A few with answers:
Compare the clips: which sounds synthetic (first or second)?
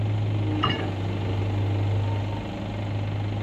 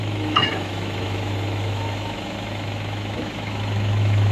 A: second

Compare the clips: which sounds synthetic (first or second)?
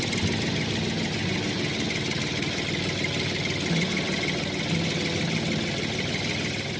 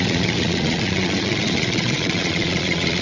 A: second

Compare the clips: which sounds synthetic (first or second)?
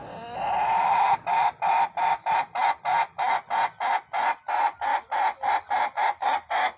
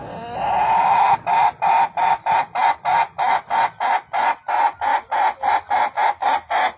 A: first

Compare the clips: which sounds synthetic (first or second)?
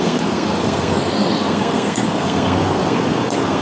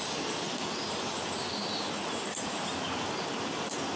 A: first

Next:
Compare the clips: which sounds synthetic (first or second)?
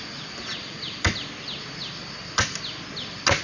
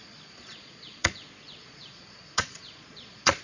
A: second